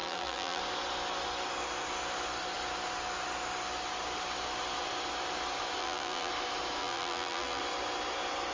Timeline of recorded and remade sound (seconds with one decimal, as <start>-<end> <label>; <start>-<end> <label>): 0.0-0.6 remade; 0.6-5.8 recorded; 5.8-6.3 remade; 6.3-6.8 recorded; 6.8-7.6 remade; 7.6-8.5 recorded